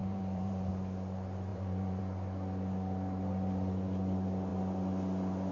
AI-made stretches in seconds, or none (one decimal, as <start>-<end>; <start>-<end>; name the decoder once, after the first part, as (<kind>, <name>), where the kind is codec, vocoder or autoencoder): 0.0-0.7 (vocoder, BigVGAN v2); 1.5-2.0